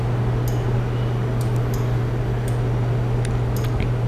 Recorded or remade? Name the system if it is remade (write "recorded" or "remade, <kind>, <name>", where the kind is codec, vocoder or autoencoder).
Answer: recorded